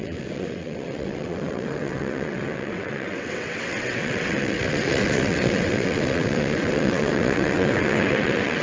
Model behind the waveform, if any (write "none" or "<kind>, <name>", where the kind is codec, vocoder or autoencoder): vocoder, WaveNeXt